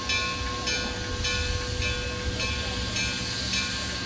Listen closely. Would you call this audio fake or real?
real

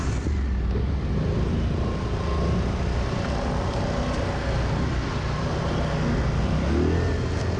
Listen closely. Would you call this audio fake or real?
real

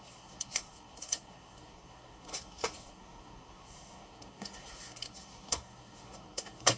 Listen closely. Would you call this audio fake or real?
fake